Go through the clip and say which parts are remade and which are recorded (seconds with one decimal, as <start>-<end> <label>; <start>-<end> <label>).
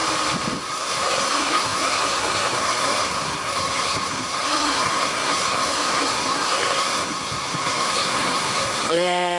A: 0.0-0.6 recorded; 0.6-9.4 remade